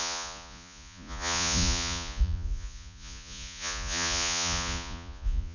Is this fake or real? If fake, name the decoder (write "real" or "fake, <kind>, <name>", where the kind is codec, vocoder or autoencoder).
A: fake, vocoder, Vocos